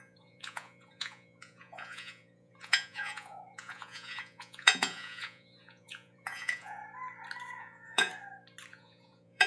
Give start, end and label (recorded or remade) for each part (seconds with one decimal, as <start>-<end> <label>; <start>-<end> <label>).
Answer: 0.0-6.8 remade; 6.8-7.6 recorded; 7.6-8.1 remade; 8.1-8.7 recorded; 8.7-9.5 remade